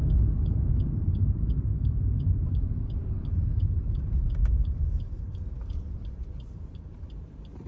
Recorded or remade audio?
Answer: remade